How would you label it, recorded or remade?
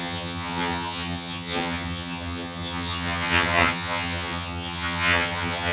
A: remade